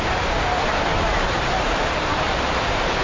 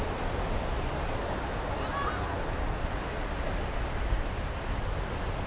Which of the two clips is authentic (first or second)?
second